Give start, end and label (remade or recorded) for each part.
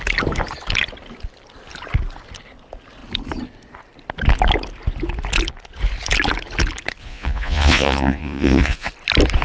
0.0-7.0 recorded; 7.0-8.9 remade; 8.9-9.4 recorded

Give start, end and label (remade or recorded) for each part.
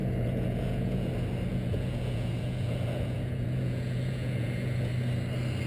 0.0-1.1 remade; 1.1-1.5 recorded; 1.5-4.9 remade; 4.9-5.7 recorded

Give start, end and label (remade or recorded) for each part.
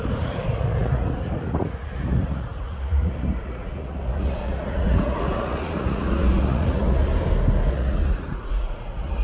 0.0-7.1 remade; 7.1-7.7 recorded; 7.7-9.2 remade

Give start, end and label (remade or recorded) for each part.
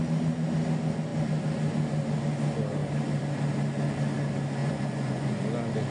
0.0-4.6 recorded; 4.6-5.4 remade; 5.4-5.9 recorded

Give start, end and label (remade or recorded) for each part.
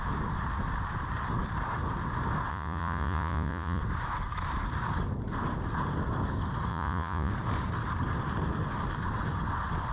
0.0-2.5 recorded; 2.5-3.8 remade; 3.8-6.7 recorded; 6.7-7.3 remade; 7.3-9.9 recorded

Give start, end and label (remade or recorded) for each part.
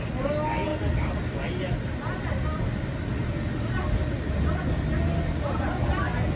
0.0-6.4 recorded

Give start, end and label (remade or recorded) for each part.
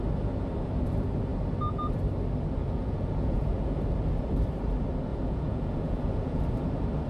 0.0-2.6 recorded; 2.6-3.8 remade; 3.8-5.1 recorded; 5.1-6.4 remade; 6.4-7.1 recorded